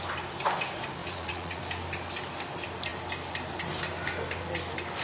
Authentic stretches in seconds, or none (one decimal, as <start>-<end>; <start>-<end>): 0.0-1.0; 1.6-5.0